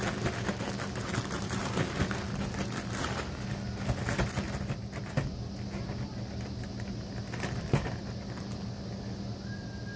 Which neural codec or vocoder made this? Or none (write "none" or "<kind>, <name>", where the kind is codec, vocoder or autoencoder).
none